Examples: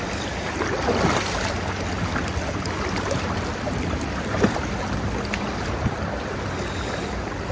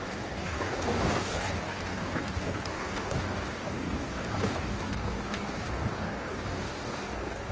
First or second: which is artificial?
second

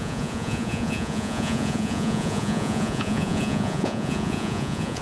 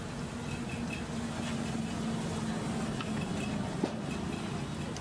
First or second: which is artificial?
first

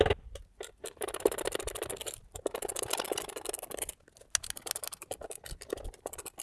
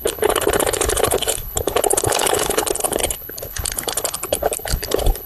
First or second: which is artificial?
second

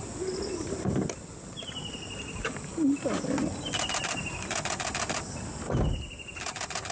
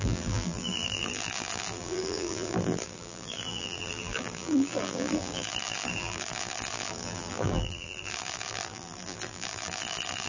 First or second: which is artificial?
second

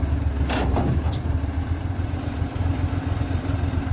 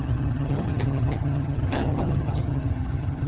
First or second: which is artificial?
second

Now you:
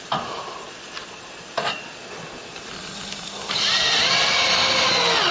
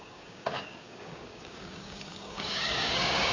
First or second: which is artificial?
second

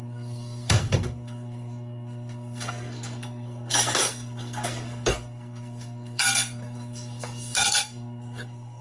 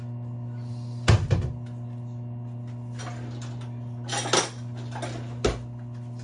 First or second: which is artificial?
first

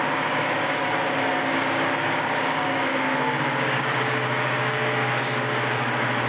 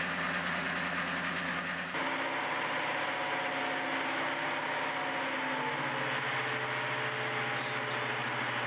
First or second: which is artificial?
first